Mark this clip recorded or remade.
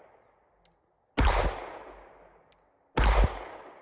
recorded